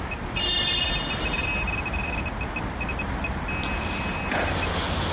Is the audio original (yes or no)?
yes